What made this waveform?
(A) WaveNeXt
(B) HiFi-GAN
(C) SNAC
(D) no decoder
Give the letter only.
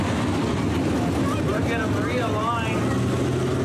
D